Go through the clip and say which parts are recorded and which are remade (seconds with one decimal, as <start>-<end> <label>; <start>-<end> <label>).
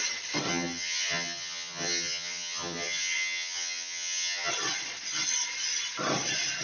0.0-0.5 recorded; 0.5-4.5 remade; 4.5-6.6 recorded